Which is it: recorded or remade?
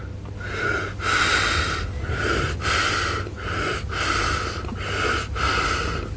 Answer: recorded